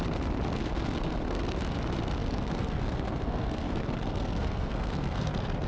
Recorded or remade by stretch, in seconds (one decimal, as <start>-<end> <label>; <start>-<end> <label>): 0.0-0.6 recorded; 0.6-1.6 remade; 1.6-2.2 recorded; 2.2-5.3 remade; 5.3-5.7 recorded